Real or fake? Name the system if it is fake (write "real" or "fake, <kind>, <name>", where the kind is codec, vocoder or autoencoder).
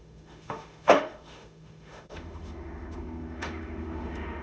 fake, autoencoder, DAC-VAE